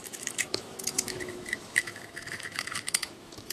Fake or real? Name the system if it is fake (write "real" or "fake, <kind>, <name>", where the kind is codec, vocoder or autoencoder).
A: fake, autoencoder, DAC-VAE